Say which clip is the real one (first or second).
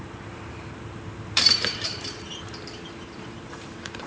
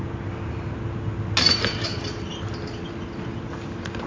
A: second